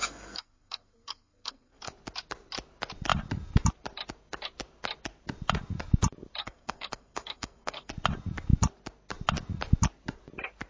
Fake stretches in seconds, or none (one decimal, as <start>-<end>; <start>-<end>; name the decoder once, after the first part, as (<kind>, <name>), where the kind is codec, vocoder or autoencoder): 0.0-1.9 (codec, SNAC); 6.4-7.9